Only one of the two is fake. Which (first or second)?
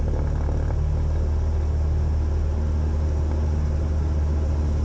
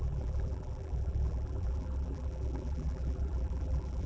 second